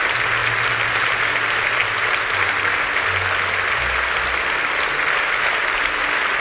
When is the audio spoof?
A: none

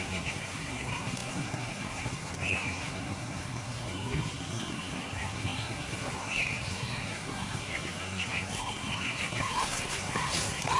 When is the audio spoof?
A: 0.0-10.8 (codec, SNAC)

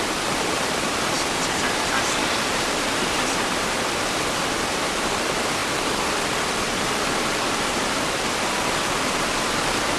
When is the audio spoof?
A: none

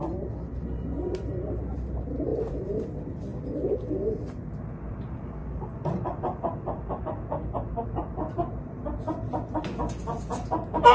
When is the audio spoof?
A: 2.3-2.9 (vocoder, BigVGAN v2); 5.4-7.0

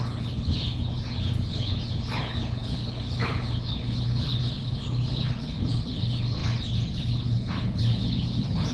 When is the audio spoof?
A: 0.0-8.7 (codec, HILCodec)